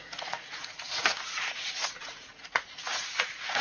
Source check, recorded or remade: remade